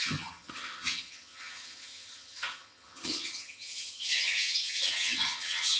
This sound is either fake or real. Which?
fake